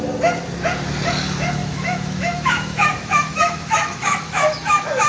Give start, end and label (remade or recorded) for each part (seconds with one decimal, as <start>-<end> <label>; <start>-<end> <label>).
0.0-1.6 recorded; 1.6-5.1 remade